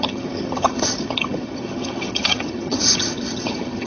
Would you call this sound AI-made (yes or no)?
yes